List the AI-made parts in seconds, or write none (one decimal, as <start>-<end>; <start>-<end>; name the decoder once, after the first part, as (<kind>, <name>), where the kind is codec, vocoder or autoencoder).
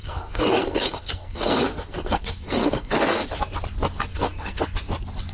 0.0-3.2 (codec, SNAC); 4.1-4.6